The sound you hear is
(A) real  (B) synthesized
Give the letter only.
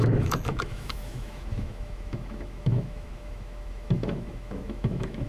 B